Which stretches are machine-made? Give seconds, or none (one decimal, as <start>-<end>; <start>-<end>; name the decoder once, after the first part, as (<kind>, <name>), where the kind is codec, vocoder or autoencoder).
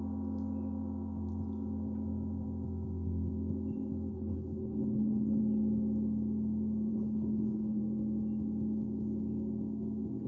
4.1-5.4 (codec, HILCodec); 6.9-7.8